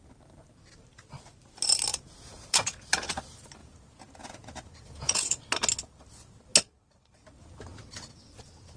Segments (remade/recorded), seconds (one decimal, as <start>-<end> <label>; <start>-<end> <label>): 0.0-1.9 recorded; 1.9-3.2 remade; 3.2-3.6 recorded; 3.6-5.4 remade; 5.4-8.8 recorded

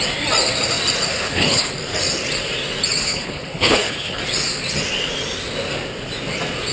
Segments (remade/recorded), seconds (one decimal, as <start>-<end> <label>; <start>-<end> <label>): 0.0-1.1 recorded; 1.1-1.7 remade; 1.7-3.0 recorded; 3.0-4.2 remade; 4.2-6.7 recorded

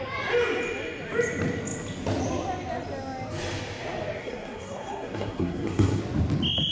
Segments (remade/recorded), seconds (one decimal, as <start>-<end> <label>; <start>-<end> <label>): 0.0-4.2 recorded; 4.2-6.0 remade; 6.0-6.7 recorded

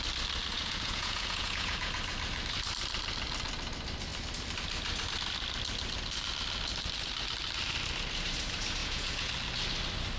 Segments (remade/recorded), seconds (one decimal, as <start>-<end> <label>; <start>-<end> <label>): 0.0-0.5 recorded; 0.5-1.9 remade; 1.9-8.8 recorded; 8.8-9.3 remade; 9.3-10.2 recorded

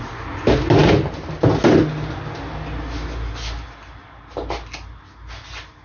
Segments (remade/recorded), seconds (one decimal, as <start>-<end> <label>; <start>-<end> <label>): 0.0-5.8 recorded

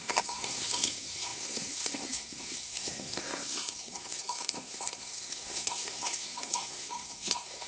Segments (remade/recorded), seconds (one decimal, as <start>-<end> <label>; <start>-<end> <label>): 0.0-7.7 remade

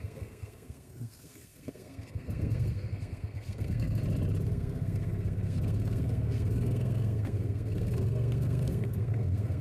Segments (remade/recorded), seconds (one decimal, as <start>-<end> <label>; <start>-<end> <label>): 0.0-4.0 remade; 4.0-4.5 recorded; 4.5-9.6 remade

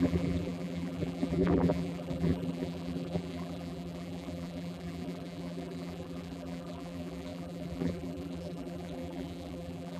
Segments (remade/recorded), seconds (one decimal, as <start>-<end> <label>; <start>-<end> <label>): 0.0-10.0 remade